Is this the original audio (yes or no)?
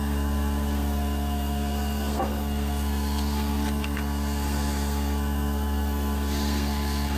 no